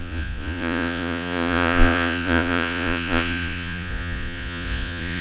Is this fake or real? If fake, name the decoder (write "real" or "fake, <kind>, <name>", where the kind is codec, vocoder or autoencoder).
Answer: fake, vocoder, Vocos